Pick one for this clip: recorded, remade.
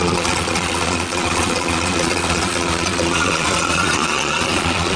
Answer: remade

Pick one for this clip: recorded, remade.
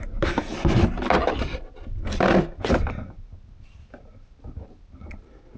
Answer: recorded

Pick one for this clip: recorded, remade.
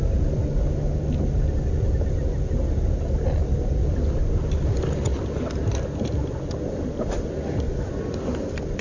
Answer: recorded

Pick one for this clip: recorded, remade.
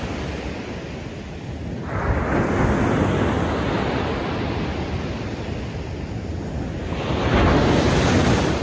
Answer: recorded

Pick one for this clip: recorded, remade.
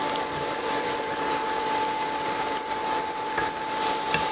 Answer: recorded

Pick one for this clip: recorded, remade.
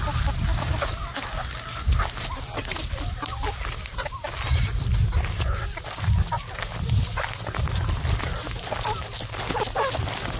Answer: recorded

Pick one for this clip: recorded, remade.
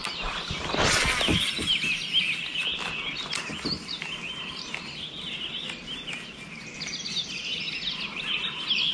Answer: recorded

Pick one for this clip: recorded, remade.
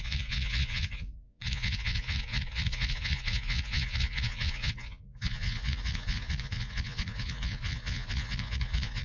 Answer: remade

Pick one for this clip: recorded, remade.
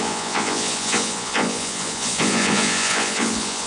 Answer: remade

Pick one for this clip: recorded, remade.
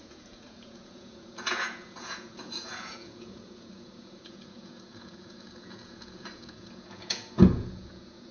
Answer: remade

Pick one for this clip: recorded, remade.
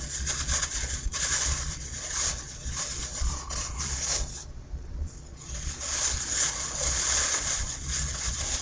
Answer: remade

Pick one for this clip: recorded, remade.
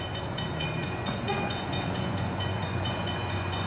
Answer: remade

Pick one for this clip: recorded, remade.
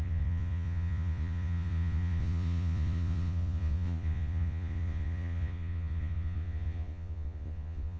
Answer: remade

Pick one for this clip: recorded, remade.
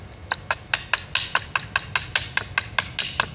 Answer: recorded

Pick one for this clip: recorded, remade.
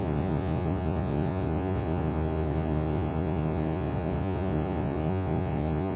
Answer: remade